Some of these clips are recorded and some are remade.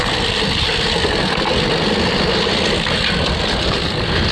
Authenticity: recorded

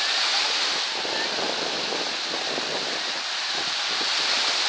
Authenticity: recorded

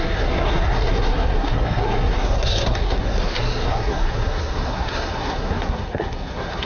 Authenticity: remade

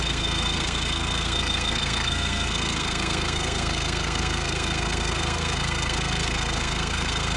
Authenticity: remade